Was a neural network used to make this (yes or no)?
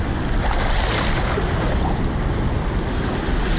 no